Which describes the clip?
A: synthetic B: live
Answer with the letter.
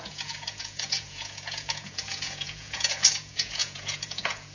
A